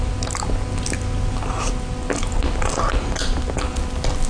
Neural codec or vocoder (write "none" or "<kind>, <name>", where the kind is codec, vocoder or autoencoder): none